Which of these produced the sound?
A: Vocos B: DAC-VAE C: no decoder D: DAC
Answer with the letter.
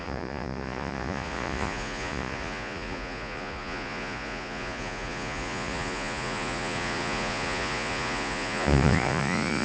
A